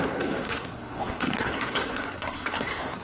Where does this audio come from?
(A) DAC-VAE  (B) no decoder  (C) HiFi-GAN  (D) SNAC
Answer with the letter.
D